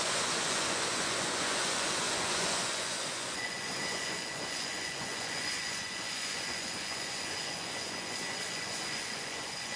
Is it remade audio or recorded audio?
remade